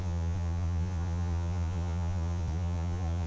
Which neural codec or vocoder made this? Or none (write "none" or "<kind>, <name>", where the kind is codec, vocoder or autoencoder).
vocoder, Vocos